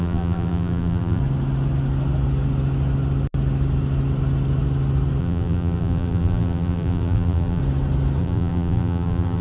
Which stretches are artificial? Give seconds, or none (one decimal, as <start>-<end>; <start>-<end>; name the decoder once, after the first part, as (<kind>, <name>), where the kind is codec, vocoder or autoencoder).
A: 0.0-1.2 (vocoder, BigVGAN v2); 5.2-7.6; 8.2-9.4